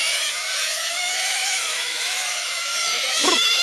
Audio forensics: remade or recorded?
remade